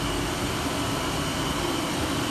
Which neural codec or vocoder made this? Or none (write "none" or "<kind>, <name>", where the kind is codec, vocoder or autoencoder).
none